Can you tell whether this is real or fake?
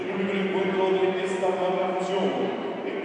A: real